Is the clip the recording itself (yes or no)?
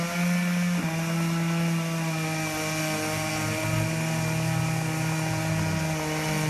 yes